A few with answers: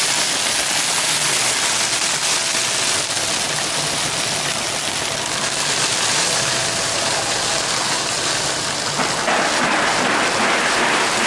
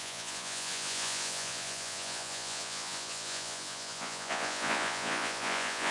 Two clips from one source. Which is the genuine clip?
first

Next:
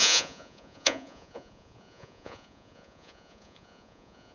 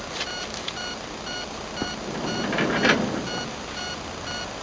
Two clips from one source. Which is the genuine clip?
second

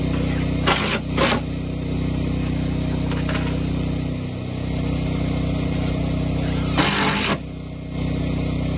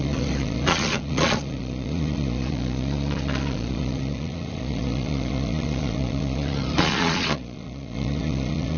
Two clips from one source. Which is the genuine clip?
first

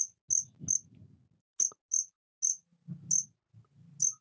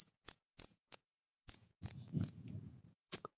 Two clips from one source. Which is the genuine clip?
first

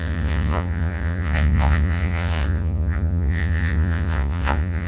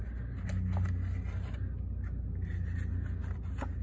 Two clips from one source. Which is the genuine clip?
second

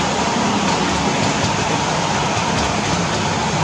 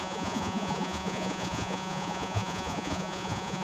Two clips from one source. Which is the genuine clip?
first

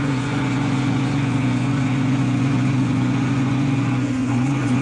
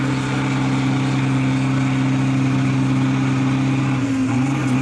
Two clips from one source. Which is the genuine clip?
second